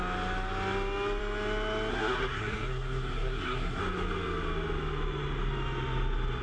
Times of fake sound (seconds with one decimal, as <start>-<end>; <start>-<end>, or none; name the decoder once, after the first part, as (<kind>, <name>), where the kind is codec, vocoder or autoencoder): 1.9-3.8 (codec, SNAC)